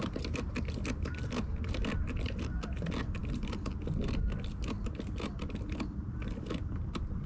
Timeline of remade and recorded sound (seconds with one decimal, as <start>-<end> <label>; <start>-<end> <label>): 0.0-7.3 recorded